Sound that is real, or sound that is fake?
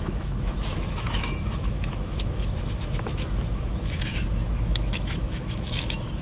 fake